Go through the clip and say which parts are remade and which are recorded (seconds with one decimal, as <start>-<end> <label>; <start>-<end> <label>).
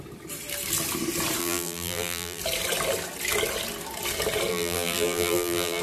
0.0-1.4 recorded; 1.4-2.4 remade; 2.4-4.5 recorded; 4.5-5.8 remade